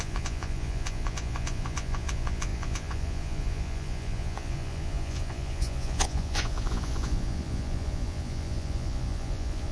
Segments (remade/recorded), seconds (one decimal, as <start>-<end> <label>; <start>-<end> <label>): 0.0-9.7 remade